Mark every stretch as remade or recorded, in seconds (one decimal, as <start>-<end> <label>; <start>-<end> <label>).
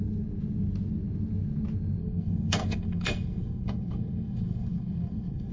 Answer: 0.0-2.0 recorded; 2.0-5.5 remade